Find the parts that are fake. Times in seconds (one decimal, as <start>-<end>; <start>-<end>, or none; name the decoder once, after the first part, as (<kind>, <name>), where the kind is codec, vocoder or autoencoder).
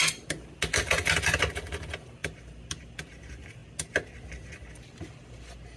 none